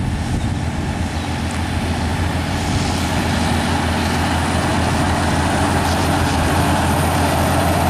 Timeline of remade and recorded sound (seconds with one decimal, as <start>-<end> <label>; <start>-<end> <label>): 0.0-2.1 recorded; 2.1-2.7 remade; 2.7-7.9 recorded